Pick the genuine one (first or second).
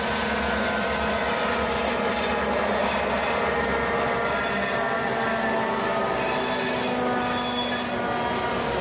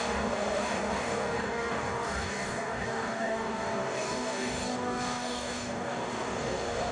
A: first